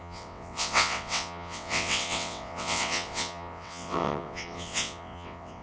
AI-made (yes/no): yes